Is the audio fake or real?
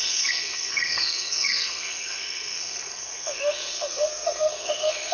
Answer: fake